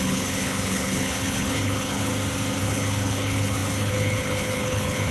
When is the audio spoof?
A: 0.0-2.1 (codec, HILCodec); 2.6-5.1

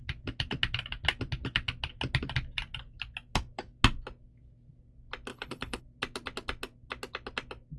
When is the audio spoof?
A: 5.3-5.8 (codec, HILCodec)

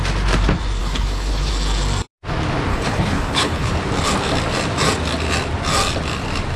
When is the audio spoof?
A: 0.8-1.5 (codec, HILCodec); 2.7-3.7

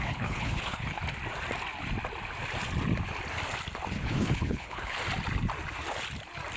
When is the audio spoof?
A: 0.0-1.0 (codec, HILCodec); 3.9-5.0

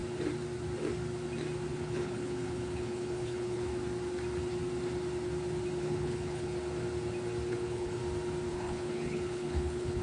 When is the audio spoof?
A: 1.7-3.7 (codec, HILCodec); 5.8-6.5; 7.5-8.0; 8.5-10.0

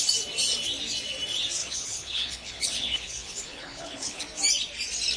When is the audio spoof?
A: 1.6-4.2 (codec, HILCodec)

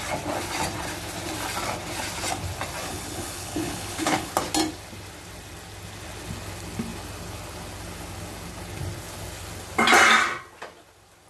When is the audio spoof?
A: 2.9-4.3 (codec, HILCodec)